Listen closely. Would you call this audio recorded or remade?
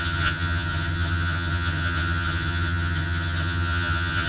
remade